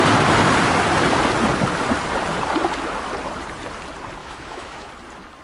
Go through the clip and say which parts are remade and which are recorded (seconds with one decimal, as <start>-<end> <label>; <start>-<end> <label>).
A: 0.0-4.2 recorded; 4.2-4.9 remade; 4.9-5.4 recorded

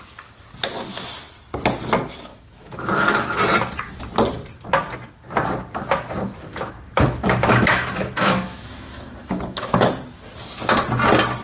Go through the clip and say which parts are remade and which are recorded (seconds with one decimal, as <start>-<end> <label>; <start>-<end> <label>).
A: 0.0-2.3 recorded; 2.3-3.4 remade; 3.4-6.5 recorded; 6.5-9.9 remade; 9.9-11.4 recorded

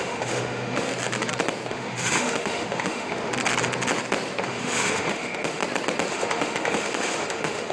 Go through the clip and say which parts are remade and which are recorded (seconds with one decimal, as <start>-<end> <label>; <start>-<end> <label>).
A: 0.0-0.9 remade; 0.9-1.7 recorded; 1.7-3.3 remade; 3.3-4.4 recorded; 4.4-5.6 remade; 5.6-6.1 recorded; 6.1-7.7 remade

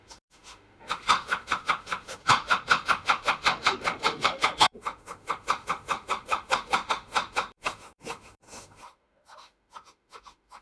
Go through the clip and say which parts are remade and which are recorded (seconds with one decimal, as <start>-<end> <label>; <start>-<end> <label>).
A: 0.0-10.6 remade